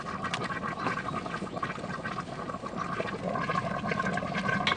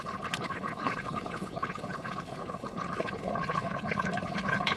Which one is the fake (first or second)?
second